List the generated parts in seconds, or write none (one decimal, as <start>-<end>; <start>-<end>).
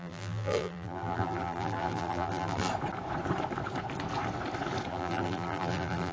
0.0-2.7; 4.9-6.1